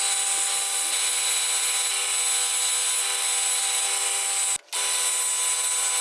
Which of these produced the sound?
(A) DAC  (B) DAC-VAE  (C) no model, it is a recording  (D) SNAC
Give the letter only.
C